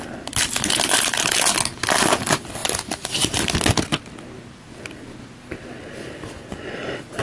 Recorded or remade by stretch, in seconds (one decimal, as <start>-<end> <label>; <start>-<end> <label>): 0.0-7.2 recorded